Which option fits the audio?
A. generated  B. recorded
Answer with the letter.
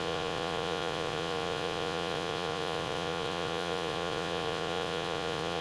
A